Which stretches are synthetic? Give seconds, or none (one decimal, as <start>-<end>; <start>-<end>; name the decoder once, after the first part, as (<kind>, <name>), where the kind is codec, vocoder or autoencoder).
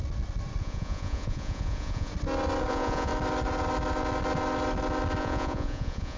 0.6-2.1 (vocoder, Vocos); 2.7-3.1; 5.2-6.2